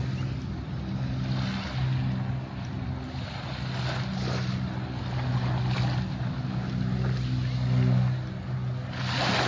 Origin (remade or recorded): recorded